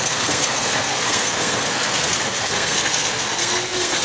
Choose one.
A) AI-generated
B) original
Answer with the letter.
A